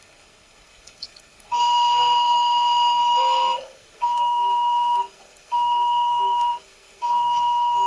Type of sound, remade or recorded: remade